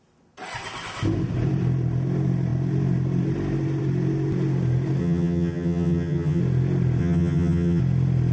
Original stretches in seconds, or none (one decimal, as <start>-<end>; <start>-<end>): 0.0-5.0; 6.4-7.0; 7.8-8.3